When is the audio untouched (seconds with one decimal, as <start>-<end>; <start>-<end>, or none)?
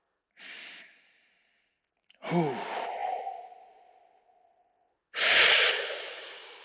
0.0-6.6